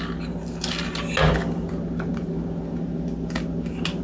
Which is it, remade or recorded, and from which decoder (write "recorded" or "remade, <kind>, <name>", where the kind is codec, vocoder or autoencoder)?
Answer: recorded